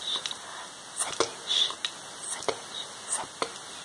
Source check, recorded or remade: recorded